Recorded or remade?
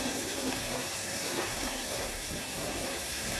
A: remade